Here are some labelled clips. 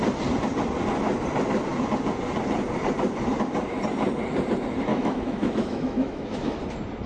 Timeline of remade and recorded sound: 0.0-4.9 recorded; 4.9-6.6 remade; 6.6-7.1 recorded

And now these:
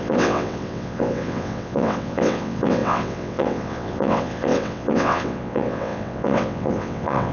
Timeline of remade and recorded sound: 0.0-7.3 remade

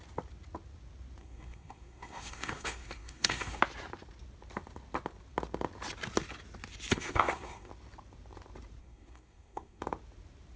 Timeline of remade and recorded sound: 0.0-1.2 recorded; 1.2-3.6 remade; 3.6-6.9 recorded; 6.9-7.7 remade; 7.7-8.8 recorded; 8.8-9.8 remade; 9.8-10.6 recorded

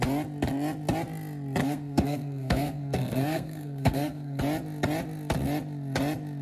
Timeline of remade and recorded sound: 0.0-1.6 recorded; 1.6-4.4 remade; 4.4-6.4 recorded

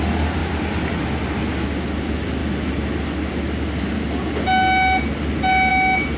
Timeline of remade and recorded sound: 0.0-6.2 recorded

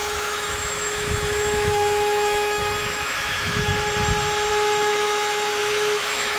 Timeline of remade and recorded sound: 0.0-3.7 remade; 3.7-4.5 recorded; 4.5-6.4 remade

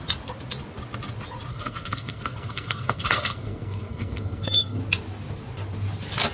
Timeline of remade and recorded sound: 0.0-1.5 recorded; 1.5-4.8 remade; 4.8-6.3 recorded

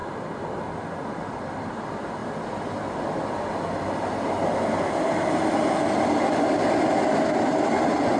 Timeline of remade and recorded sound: 0.0-8.2 recorded